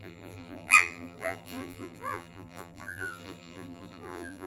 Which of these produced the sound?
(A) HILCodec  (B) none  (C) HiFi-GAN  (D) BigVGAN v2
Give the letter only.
D